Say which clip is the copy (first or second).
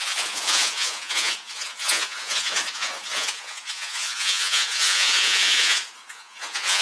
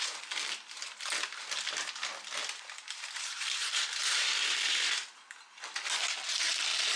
first